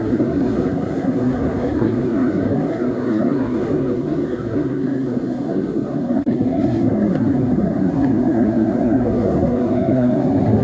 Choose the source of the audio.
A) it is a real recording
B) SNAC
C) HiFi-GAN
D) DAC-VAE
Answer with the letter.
B